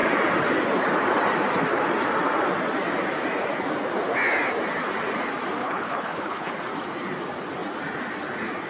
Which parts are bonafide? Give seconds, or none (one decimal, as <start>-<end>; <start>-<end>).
0.0-5.6; 6.5-8.7